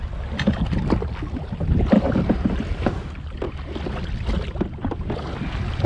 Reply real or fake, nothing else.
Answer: real